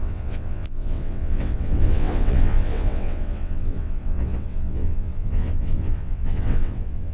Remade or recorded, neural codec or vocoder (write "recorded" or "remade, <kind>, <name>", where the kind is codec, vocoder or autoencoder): remade, vocoder, WaveNeXt